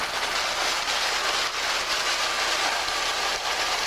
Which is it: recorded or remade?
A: recorded